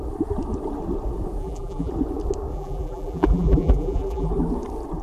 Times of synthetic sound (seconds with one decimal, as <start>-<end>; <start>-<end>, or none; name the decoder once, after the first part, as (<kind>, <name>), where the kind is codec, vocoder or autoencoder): 1.4-1.9 (vocoder, BigVGAN v2); 2.5-4.3